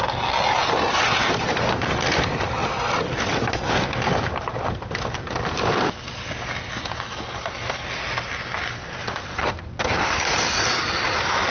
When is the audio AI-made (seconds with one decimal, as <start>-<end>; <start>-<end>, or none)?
2.6-3.5; 8.8-9.5